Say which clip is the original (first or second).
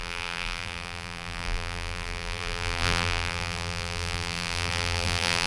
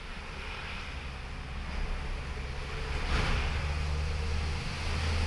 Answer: second